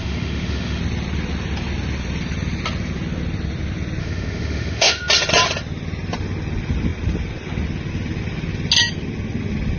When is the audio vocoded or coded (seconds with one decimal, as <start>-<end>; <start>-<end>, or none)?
0.0-0.8; 4.0-5.0